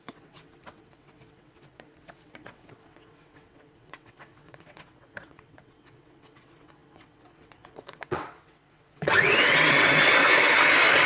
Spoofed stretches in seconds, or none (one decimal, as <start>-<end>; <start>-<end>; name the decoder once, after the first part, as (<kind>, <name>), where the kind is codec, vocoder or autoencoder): 0.0-10.2 (vocoder, WaveNeXt)

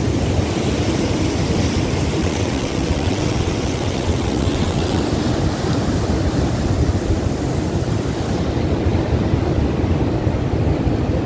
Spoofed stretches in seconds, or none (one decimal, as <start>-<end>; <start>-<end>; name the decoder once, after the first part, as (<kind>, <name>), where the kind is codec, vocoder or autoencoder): 2.2-5.0 (vocoder, WaveNeXt)

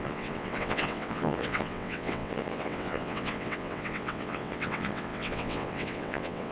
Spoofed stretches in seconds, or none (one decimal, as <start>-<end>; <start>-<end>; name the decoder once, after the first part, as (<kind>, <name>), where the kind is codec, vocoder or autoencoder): 0.0-6.5 (vocoder, WaveNeXt)